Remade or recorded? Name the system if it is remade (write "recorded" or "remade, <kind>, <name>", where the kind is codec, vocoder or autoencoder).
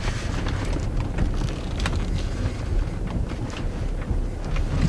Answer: recorded